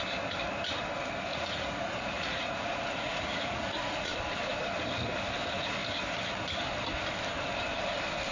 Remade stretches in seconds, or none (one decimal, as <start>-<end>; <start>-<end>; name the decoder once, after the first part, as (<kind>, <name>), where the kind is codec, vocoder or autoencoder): 1.3-4.1 (vocoder, Vocos)